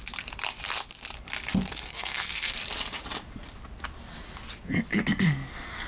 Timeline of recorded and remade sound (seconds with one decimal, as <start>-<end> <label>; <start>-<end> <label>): 0.0-1.8 recorded; 1.8-2.5 remade; 2.5-4.9 recorded; 4.9-5.9 remade